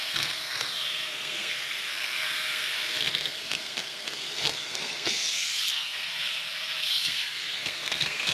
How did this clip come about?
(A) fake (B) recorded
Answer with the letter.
A